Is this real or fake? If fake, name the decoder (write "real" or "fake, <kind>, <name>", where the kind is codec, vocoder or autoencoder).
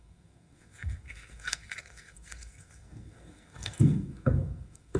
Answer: fake, codec, SNAC